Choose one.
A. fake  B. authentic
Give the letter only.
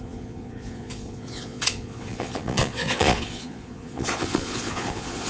A